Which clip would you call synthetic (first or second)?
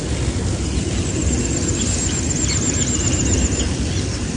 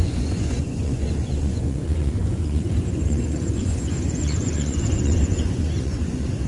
second